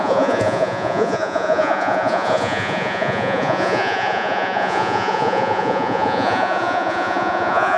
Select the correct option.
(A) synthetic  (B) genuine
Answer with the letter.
A